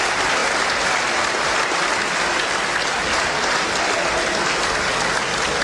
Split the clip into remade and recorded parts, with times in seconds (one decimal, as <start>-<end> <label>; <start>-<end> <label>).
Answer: 0.0-5.6 recorded